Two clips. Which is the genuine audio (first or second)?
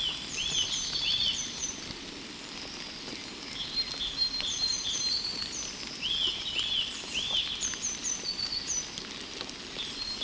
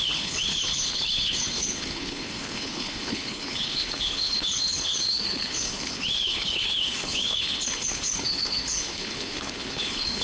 first